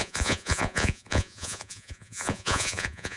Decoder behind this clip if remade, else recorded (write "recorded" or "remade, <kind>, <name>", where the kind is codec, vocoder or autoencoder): remade, vocoder, Vocos